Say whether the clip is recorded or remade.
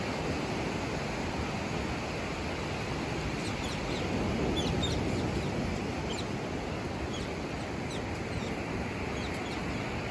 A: recorded